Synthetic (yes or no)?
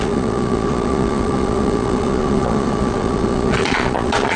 yes